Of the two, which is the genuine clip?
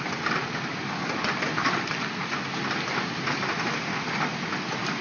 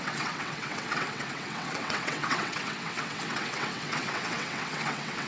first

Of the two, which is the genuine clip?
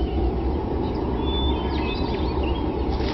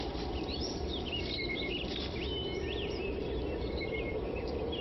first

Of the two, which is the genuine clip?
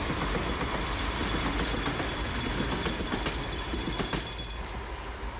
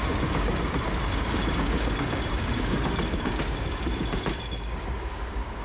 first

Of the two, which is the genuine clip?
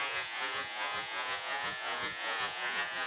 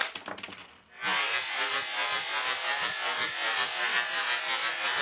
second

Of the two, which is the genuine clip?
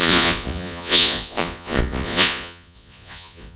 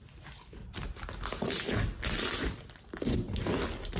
second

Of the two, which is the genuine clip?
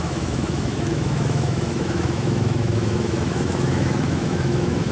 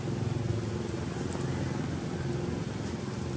second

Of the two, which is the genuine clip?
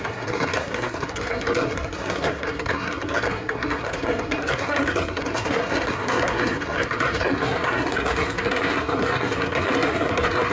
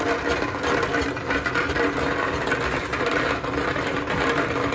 second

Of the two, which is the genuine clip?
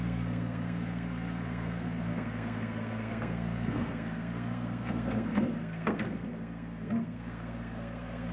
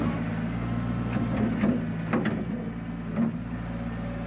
second